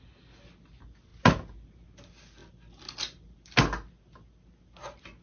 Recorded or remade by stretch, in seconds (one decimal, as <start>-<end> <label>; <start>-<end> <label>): 0.0-5.2 recorded